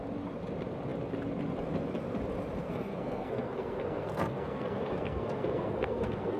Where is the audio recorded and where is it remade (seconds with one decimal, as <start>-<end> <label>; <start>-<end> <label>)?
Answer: 0.0-2.6 recorded; 2.6-6.4 remade

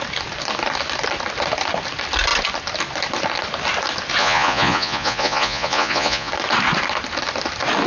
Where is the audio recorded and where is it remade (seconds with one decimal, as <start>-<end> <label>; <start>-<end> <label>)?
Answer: 0.0-4.2 recorded; 4.2-6.3 remade; 6.3-7.9 recorded

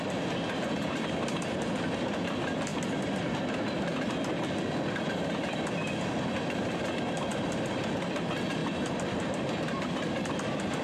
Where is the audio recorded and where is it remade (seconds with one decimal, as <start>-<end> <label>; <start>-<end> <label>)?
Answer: 0.0-2.7 recorded; 2.7-6.2 remade; 6.2-7.3 recorded; 7.3-7.9 remade; 7.9-8.6 recorded; 8.6-9.4 remade; 9.4-10.8 recorded

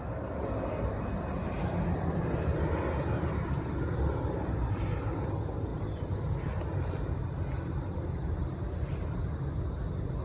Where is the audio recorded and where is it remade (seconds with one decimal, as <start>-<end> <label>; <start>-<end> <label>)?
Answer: 0.0-10.2 recorded

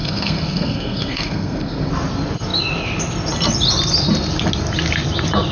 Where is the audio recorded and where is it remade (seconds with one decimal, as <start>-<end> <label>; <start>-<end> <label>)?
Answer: 0.0-1.9 remade; 1.9-5.5 recorded

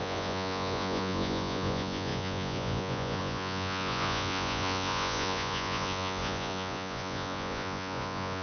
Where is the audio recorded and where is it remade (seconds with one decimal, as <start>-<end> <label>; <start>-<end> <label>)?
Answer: 0.0-8.4 remade